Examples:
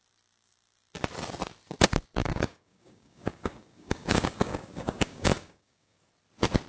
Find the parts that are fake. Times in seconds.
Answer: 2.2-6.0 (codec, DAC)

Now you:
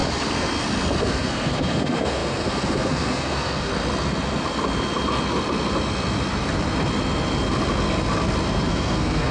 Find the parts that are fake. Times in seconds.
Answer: 1.0-3.7 (codec, SNAC); 8.7-9.3